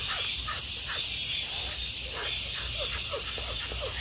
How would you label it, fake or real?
real